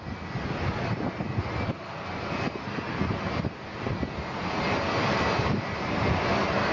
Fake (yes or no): no